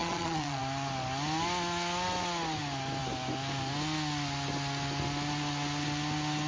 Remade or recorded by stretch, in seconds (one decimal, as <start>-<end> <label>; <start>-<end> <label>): 0.0-0.6 remade; 0.6-6.5 recorded